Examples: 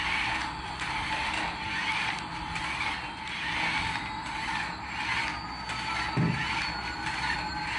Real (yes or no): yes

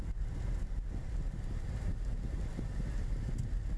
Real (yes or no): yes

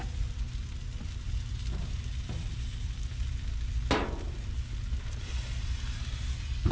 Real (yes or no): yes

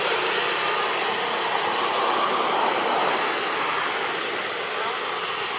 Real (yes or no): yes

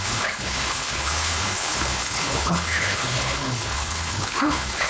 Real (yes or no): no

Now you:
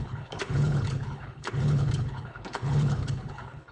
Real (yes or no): no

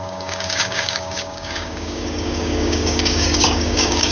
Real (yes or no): no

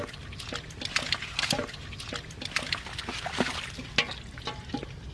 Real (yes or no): yes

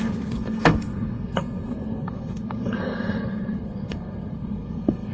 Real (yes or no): no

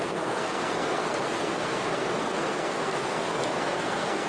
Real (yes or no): no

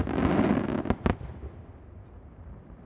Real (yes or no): yes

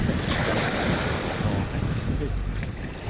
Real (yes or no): yes